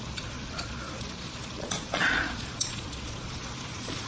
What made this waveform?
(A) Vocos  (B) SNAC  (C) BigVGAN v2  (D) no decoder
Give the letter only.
A